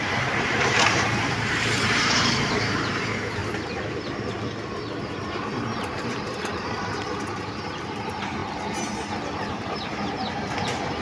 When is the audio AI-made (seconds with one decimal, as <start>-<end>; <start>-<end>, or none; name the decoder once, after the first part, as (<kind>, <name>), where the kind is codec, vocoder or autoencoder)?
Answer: 0.0-3.4 (vocoder, BigVGAN v2); 5.1-8.4; 9.5-11.0